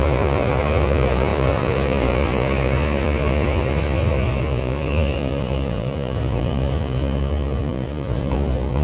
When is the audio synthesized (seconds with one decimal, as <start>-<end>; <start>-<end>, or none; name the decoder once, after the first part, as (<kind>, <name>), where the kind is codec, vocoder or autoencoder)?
0.0-8.8 (vocoder, Vocos)